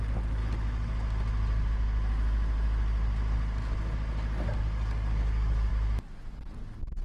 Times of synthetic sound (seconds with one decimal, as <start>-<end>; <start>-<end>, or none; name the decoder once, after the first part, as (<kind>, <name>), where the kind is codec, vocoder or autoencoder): 0.0-0.4 (codec, DAC); 4.6-5.7; 6.3-7.0